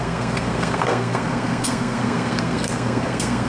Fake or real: fake